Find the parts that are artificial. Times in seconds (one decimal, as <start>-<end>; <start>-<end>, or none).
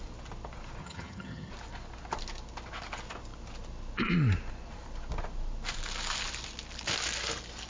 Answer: 0.8-1.5